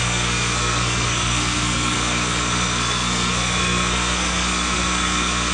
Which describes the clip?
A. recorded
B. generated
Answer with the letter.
B